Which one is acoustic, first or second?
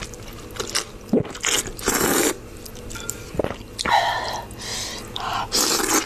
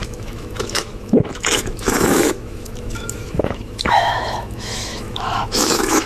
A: first